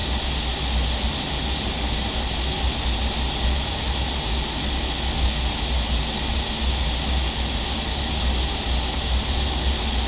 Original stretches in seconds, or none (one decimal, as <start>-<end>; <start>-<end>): 0.0-10.1